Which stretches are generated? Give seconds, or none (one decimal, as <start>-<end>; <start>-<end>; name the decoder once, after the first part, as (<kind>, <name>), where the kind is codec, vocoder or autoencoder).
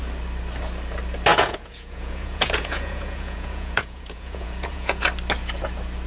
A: 1.3-5.0 (vocoder, Vocos)